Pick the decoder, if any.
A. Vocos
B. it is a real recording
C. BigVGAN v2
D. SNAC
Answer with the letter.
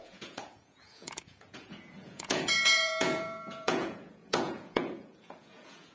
A